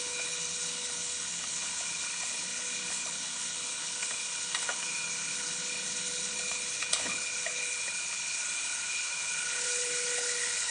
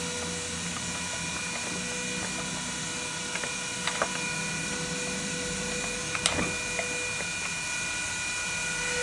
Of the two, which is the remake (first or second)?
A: first